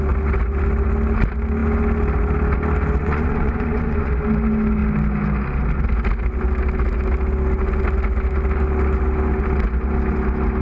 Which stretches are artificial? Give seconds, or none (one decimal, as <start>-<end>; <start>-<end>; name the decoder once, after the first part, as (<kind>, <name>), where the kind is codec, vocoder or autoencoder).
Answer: 3.0-4.1 (vocoder, Vocos)